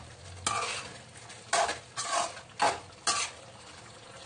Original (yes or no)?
yes